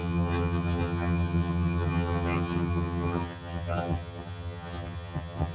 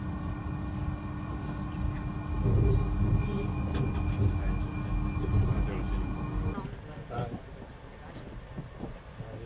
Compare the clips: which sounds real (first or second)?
second